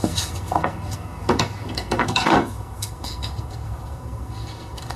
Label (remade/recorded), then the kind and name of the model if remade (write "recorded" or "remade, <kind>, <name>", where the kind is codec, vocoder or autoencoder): remade, codec, SNAC